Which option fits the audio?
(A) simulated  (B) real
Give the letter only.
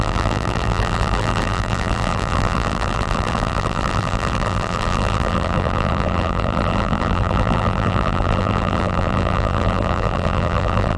A